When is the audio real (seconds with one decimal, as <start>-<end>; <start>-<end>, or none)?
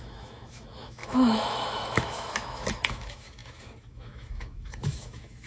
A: none